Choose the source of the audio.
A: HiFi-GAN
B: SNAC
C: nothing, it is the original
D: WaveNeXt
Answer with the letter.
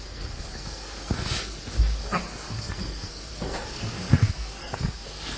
B